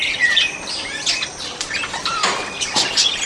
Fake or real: fake